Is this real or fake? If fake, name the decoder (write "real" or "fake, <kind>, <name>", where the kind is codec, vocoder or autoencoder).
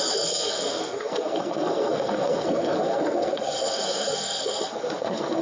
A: fake, codec, SNAC